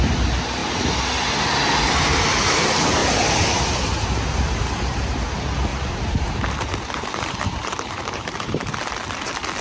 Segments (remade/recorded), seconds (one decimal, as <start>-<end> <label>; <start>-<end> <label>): 0.0-3.0 recorded; 3.0-3.6 remade; 3.6-5.7 recorded; 5.7-8.9 remade; 8.9-9.6 recorded